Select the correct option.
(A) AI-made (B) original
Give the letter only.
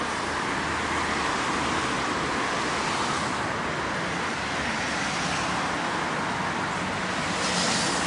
B